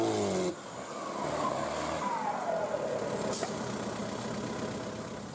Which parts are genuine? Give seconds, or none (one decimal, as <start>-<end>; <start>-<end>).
0.0-5.3